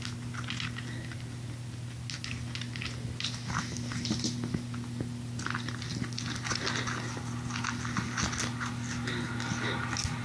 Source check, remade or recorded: recorded